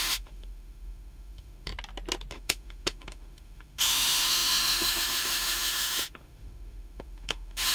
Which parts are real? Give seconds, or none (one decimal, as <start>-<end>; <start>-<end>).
1.7-2.3